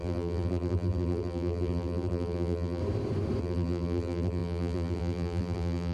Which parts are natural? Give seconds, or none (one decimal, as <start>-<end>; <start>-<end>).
2.8-3.4